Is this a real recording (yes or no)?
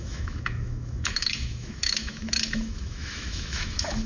no